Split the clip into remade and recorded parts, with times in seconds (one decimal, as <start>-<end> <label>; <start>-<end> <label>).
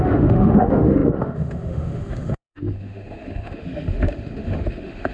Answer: 0.0-5.1 remade